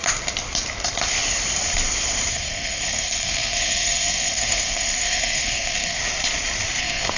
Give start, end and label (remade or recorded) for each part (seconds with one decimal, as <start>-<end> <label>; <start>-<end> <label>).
0.0-2.3 recorded; 2.3-6.0 remade; 6.0-6.8 recorded; 6.8-7.2 remade